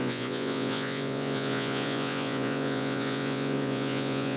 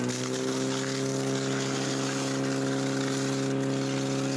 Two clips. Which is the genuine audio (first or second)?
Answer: second